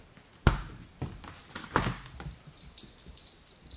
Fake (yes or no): no